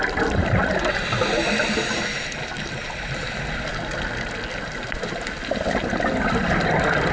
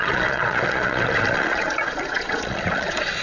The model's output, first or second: second